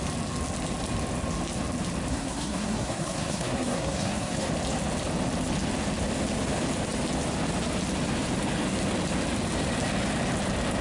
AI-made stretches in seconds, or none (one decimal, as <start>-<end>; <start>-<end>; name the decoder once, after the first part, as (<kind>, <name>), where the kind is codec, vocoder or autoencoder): 2.1-4.5 (codec, SNAC)